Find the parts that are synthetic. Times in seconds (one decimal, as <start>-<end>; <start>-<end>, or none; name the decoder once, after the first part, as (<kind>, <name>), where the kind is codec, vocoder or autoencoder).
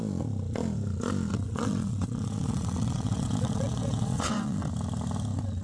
1.3-4.7 (vocoder, WaveNeXt)